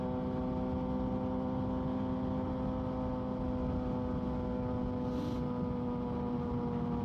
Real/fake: real